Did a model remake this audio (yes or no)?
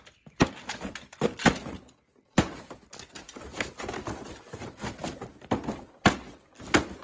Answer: no